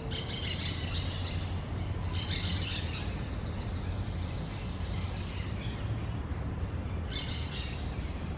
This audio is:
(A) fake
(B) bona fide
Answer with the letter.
B